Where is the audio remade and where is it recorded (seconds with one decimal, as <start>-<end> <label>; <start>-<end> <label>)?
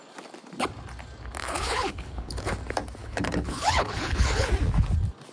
0.0-1.4 recorded; 1.4-2.5 remade; 2.5-3.0 recorded; 3.0-4.5 remade; 4.5-5.3 recorded